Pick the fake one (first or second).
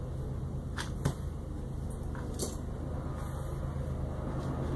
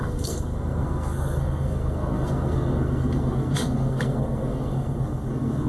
second